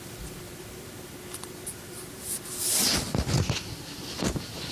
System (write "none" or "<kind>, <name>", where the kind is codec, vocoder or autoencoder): none